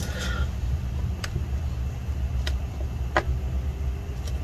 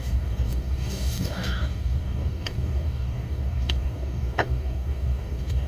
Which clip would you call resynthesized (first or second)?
second